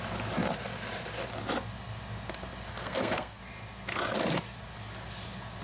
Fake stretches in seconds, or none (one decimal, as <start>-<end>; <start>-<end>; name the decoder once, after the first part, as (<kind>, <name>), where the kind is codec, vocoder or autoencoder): 2.7-3.4 (codec, SNAC)